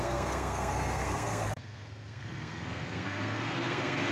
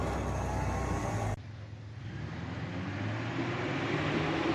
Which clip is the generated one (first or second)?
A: first